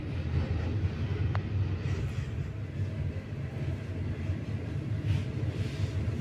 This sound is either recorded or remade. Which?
recorded